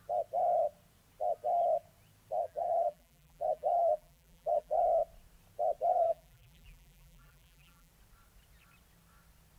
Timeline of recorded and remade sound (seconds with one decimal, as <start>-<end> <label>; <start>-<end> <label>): 0.0-2.4 recorded; 2.4-4.8 remade; 4.8-5.9 recorded; 5.9-7.9 remade; 7.9-9.6 recorded